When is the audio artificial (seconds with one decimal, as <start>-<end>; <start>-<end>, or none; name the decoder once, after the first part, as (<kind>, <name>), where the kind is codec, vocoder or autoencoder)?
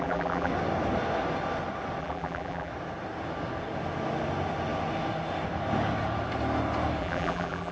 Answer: 0.0-0.5 (vocoder, BigVGAN v2); 2.0-2.7; 7.0-7.7